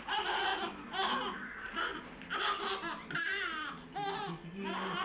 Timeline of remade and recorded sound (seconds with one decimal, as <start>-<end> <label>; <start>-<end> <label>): 0.0-0.5 remade; 0.5-1.2 recorded; 1.2-1.9 remade; 1.9-5.0 recorded